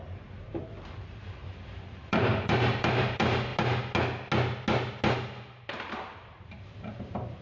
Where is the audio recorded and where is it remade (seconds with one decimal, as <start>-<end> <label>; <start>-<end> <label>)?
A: 0.0-3.5 remade; 3.5-5.6 recorded; 5.6-7.4 remade